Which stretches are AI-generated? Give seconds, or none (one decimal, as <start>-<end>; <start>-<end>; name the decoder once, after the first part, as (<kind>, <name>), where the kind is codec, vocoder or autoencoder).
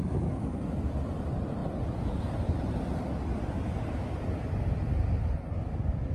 none